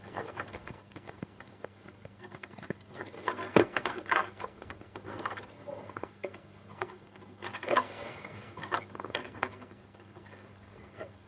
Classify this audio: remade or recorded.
remade